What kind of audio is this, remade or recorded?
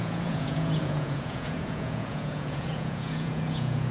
remade